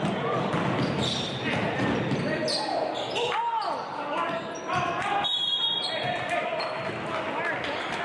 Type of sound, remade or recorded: recorded